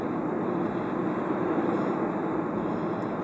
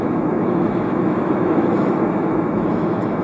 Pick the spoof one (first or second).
second